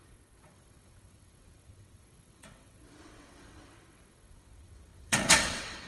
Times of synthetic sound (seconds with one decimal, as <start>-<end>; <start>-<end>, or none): 0.0-5.9